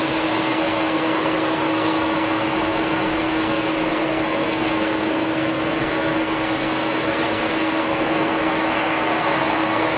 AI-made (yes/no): yes